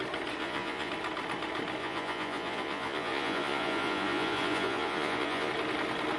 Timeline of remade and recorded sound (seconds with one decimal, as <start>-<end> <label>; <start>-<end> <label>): 0.0-0.4 recorded; 0.4-0.9 remade; 0.9-1.8 recorded; 1.8-5.5 remade; 5.5-6.2 recorded